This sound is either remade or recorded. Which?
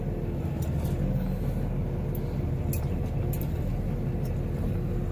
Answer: recorded